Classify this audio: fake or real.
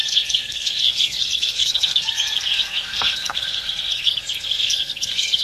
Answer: fake